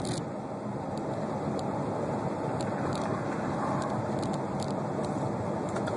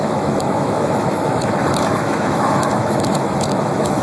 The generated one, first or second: second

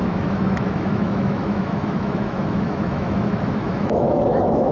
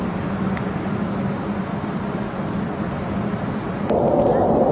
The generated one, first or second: first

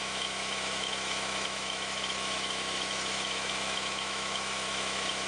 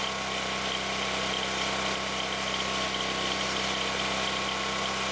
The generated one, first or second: first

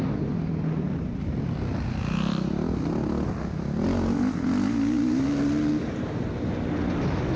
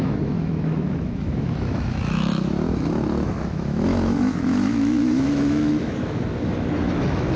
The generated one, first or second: second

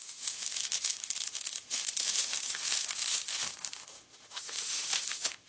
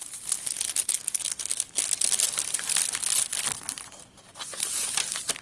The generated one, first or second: first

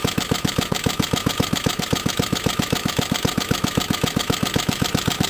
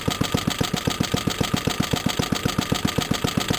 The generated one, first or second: first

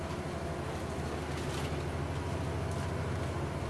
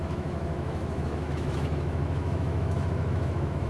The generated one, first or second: second